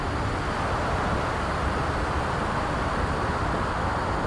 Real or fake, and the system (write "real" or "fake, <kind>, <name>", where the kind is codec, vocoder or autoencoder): real